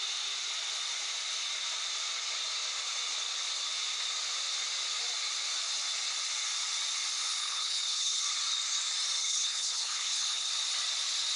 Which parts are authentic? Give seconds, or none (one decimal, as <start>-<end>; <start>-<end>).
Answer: 0.0-7.4; 8.2-9.2; 10.5-11.4